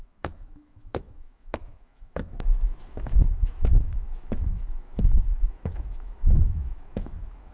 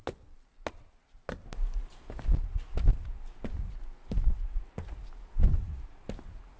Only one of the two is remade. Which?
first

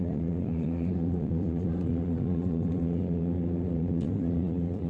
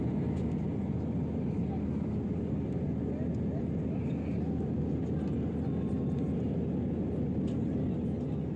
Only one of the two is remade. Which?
first